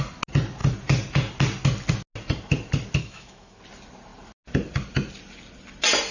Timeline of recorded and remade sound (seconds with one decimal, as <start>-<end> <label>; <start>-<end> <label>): 0.0-3.0 recorded; 3.0-3.6 remade; 3.6-6.1 recorded